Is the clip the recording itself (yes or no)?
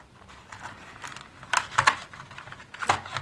yes